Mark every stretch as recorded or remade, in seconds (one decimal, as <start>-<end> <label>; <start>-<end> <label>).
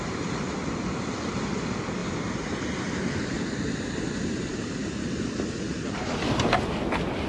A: 0.0-7.3 recorded